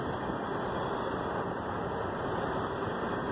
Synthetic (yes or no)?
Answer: no